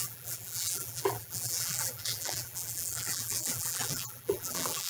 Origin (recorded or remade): remade